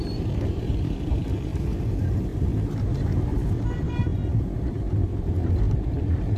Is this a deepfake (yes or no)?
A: yes